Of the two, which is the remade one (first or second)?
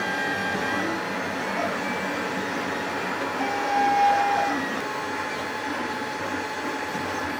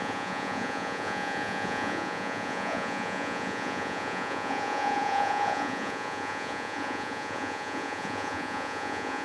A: second